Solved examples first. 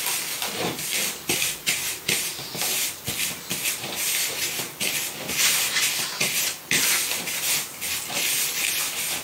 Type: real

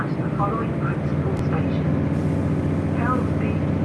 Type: real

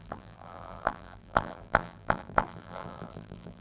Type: fake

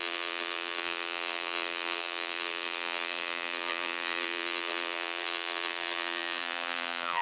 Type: fake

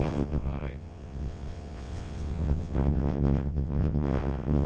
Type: fake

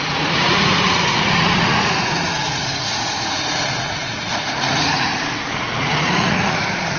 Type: fake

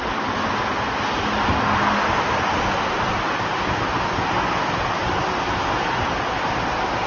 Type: real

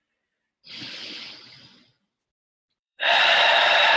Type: fake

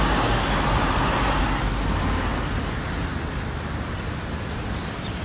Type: real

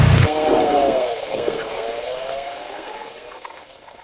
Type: fake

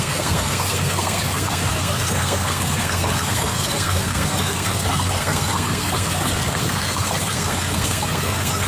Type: fake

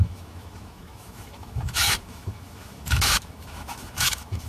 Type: fake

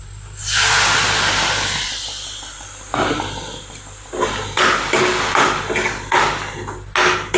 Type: real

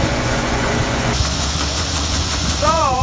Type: fake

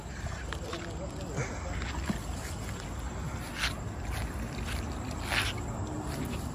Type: real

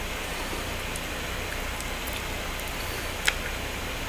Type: real